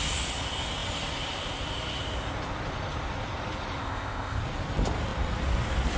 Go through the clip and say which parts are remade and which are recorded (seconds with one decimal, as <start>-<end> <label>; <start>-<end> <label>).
0.0-3.8 recorded; 3.8-4.4 remade; 4.4-6.0 recorded